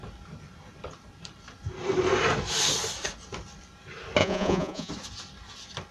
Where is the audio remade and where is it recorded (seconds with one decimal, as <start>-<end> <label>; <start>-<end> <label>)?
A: 0.0-4.2 recorded; 4.2-4.9 remade; 4.9-5.9 recorded

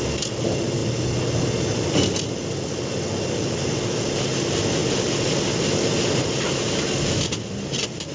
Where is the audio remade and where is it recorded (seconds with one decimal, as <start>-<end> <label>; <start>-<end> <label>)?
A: 0.0-8.1 recorded

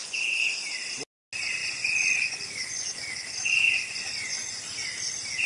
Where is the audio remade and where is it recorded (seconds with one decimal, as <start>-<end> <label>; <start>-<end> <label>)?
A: 0.0-0.6 remade; 0.6-1.6 recorded; 1.6-4.6 remade; 4.6-5.5 recorded

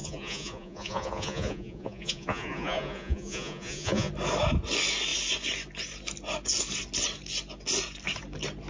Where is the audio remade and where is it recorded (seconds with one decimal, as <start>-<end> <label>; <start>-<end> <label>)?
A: 0.0-4.1 remade; 4.1-8.7 recorded

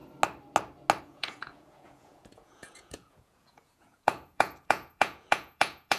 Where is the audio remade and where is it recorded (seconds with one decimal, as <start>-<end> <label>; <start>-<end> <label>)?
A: 0.0-1.0 recorded; 1.0-6.0 remade

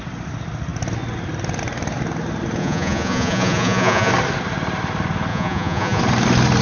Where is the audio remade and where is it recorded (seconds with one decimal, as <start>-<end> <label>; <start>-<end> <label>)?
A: 0.0-2.6 recorded; 2.6-4.1 remade; 4.1-5.3 recorded; 5.3-6.0 remade; 6.0-6.6 recorded